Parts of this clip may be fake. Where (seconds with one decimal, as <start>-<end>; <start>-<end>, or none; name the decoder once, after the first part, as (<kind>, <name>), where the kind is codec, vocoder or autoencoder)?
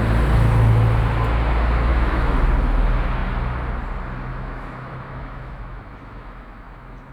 1.9-2.4 (autoencoder, DAC-VAE); 4.3-7.1